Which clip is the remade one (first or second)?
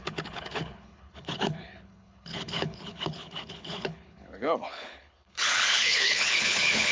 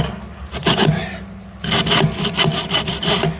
first